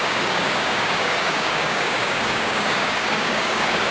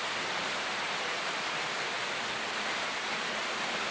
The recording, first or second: second